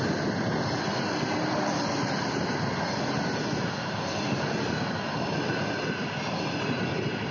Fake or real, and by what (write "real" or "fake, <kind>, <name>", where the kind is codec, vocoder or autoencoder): real